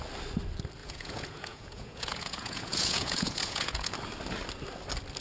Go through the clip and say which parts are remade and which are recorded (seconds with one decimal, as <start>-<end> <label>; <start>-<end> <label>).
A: 0.0-0.8 recorded; 0.8-3.9 remade; 3.9-5.2 recorded